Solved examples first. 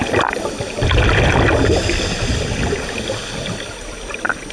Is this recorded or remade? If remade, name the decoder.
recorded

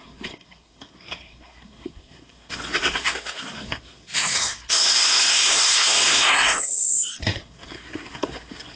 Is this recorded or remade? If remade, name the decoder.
remade, codec, SNAC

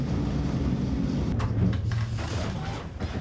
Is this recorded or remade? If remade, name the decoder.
recorded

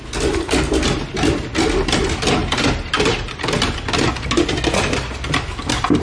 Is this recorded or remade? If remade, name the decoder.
recorded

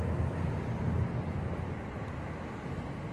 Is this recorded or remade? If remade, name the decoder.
recorded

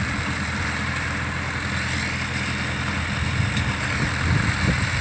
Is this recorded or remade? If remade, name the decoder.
recorded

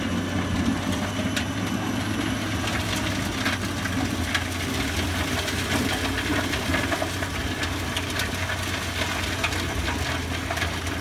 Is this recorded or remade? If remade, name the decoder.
recorded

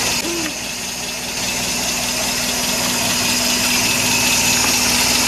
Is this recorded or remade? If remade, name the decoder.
recorded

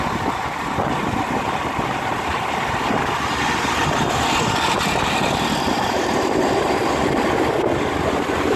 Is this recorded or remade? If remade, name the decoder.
recorded